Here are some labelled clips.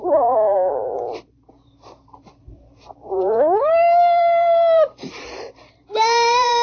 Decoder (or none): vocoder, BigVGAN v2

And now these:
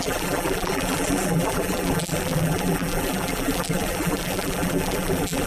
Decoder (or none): vocoder, BigVGAN v2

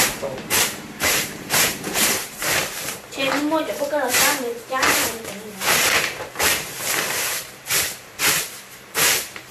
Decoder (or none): vocoder, BigVGAN v2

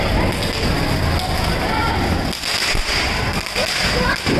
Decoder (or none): none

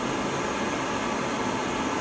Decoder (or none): none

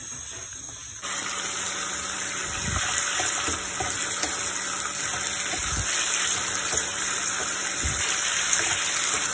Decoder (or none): none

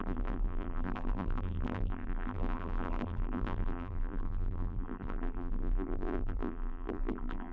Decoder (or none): vocoder, BigVGAN v2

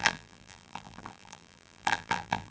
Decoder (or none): vocoder, BigVGAN v2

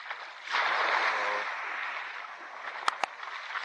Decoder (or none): none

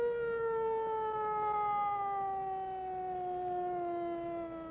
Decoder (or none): none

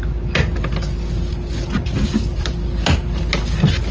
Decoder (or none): none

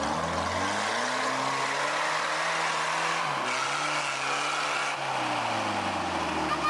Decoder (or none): none